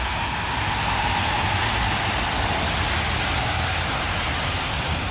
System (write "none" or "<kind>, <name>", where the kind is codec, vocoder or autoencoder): none